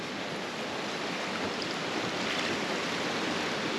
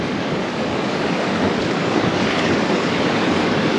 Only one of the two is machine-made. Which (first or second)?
second